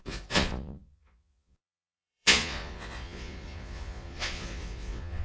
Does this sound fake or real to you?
fake